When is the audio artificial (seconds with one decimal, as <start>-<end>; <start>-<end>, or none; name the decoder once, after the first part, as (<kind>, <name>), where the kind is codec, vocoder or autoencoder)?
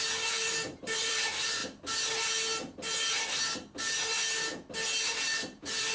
0.0-1.6 (vocoder, BigVGAN v2); 5.1-5.9